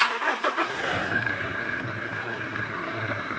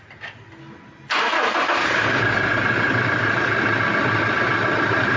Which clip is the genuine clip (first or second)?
second